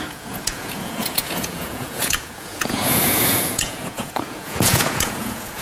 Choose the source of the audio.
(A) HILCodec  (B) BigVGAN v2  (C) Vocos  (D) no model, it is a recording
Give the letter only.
C